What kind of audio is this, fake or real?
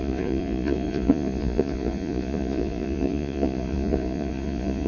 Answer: fake